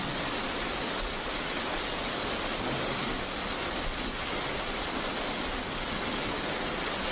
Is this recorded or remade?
recorded